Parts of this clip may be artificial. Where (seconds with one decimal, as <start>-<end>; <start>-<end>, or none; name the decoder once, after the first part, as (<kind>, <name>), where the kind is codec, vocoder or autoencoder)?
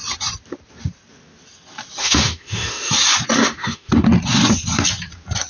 2.0-2.9 (autoencoder, DAC-VAE); 3.4-3.9